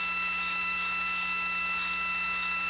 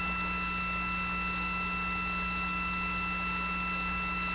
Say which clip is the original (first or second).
second